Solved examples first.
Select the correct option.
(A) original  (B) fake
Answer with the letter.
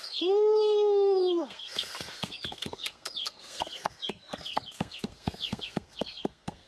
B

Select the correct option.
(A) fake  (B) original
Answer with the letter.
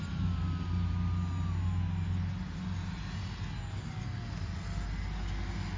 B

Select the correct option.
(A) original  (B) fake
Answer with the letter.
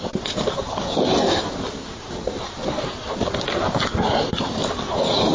A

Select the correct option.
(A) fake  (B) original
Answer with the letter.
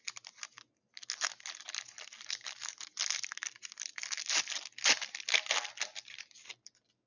B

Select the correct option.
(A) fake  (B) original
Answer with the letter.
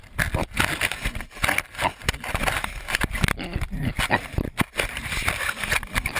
B